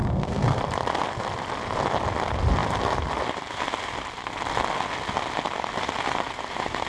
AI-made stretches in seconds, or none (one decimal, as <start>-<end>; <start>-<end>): 0.0-0.6

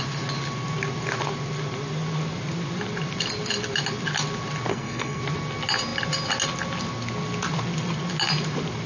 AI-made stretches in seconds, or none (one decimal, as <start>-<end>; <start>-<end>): 4.7-5.2

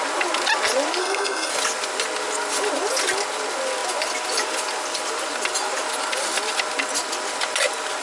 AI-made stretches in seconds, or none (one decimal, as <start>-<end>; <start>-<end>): 1.0-1.5

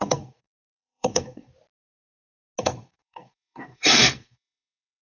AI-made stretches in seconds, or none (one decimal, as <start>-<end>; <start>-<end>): 0.0-1.5; 2.6-5.0

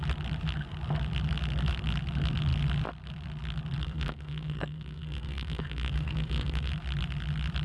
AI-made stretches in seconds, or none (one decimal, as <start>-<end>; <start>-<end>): 3.8-6.7

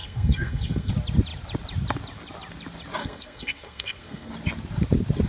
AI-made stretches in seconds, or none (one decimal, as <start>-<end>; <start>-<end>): 0.0-0.9; 3.0-4.3

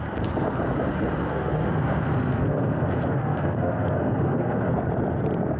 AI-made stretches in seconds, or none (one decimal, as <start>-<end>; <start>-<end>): 1.3-4.7

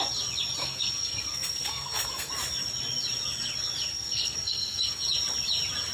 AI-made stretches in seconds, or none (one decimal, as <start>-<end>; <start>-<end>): 0.6-2.3; 3.9-5.0